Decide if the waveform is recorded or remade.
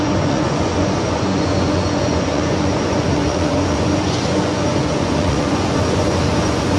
remade